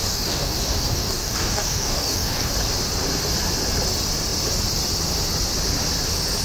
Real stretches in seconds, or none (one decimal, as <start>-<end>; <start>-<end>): 2.5-6.4